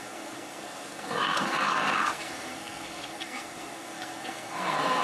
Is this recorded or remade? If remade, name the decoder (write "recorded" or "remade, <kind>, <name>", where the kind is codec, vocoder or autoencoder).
remade, codec, SNAC